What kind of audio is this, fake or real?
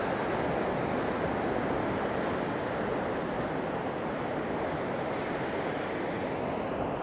real